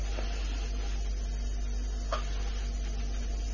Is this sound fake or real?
real